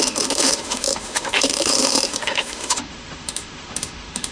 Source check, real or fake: fake